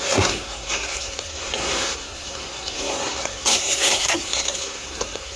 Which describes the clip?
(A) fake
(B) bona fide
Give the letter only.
A